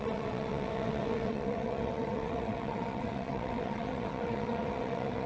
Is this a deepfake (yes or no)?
yes